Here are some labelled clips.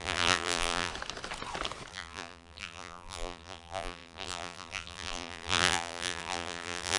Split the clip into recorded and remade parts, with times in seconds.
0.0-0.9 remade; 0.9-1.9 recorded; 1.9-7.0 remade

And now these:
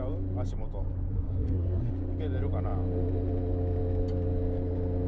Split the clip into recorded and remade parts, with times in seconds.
0.0-1.1 recorded; 1.1-1.9 remade; 1.9-5.1 recorded

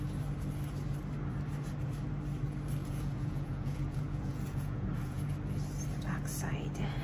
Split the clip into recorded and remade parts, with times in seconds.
0.0-2.8 recorded; 2.8-5.3 remade; 5.3-7.0 recorded